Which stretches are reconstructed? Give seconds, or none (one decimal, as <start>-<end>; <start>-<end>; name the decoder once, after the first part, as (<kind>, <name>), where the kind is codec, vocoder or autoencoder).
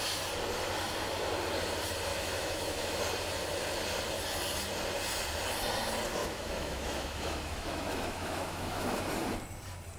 2.1-3.0 (autoencoder, DAC-VAE); 6.2-9.0